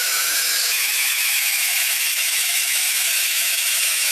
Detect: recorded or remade remade